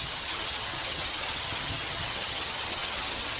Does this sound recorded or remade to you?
remade